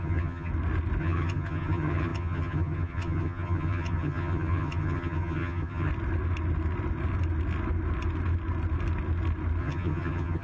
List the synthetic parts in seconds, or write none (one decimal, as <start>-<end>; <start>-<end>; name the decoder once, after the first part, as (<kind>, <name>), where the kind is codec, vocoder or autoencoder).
0.0-0.5 (vocoder, HiFi-GAN); 1.0-5.9; 9.6-10.4